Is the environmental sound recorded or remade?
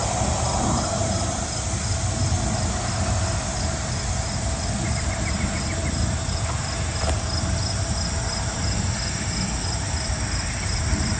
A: recorded